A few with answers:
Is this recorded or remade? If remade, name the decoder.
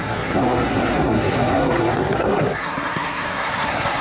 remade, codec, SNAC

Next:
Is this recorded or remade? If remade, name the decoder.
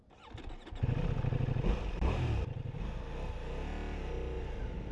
recorded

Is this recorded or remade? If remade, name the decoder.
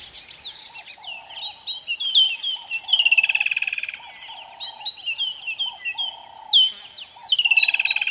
recorded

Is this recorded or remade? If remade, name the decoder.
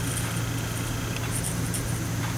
recorded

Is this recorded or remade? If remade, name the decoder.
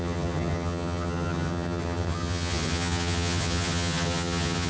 remade, vocoder, HiFi-GAN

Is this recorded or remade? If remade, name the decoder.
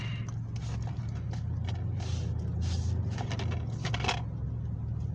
recorded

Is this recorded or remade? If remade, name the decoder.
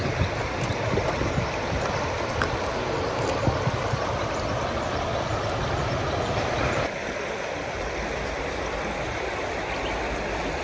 recorded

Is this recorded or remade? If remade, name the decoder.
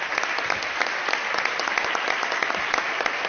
recorded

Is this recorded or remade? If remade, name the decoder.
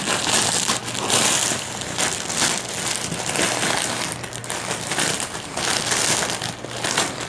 recorded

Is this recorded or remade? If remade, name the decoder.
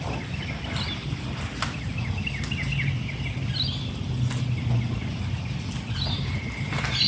recorded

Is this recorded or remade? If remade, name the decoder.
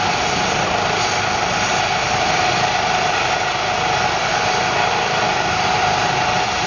recorded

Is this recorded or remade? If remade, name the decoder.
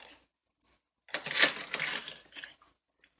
recorded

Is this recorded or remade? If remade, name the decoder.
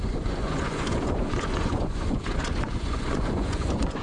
remade, vocoder, Vocos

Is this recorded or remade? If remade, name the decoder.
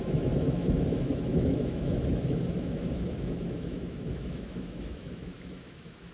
remade, autoencoder, DAC-VAE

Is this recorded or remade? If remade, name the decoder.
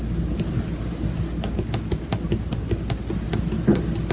recorded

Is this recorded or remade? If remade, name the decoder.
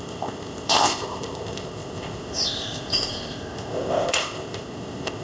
remade, codec, ZipCodec